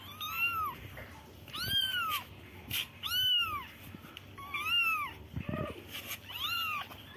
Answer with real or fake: real